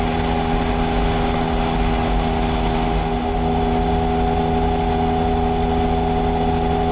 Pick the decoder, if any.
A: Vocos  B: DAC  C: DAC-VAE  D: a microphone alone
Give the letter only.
D